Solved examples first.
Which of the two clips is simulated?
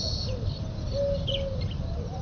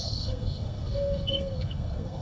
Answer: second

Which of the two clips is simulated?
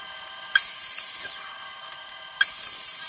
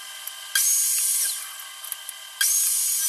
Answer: first